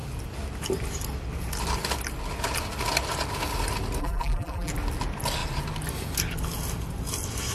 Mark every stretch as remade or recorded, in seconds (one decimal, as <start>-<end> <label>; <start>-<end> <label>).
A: 0.0-4.0 recorded; 4.0-4.7 remade; 4.7-7.5 recorded